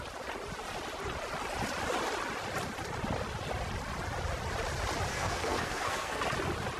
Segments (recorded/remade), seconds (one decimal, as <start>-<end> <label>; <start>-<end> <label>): 0.0-5.1 recorded; 5.1-6.2 remade; 6.2-6.8 recorded

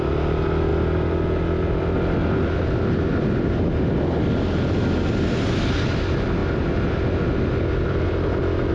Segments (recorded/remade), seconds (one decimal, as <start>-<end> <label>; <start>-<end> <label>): 0.0-8.7 recorded